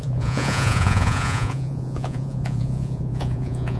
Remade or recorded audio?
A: remade